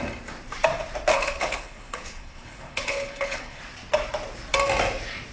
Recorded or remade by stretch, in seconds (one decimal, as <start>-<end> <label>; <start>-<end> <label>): 0.0-1.1 recorded; 1.1-3.6 remade; 3.6-5.3 recorded

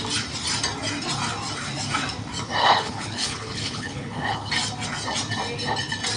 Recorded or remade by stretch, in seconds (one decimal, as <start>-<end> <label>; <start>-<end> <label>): 0.0-2.6 recorded; 2.6-4.5 remade; 4.5-6.2 recorded

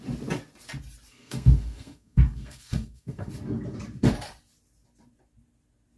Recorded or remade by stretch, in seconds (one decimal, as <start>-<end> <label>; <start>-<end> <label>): 0.0-1.1 recorded; 1.1-3.3 remade; 3.3-6.0 recorded